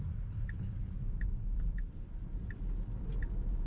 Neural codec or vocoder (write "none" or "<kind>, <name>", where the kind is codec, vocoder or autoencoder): none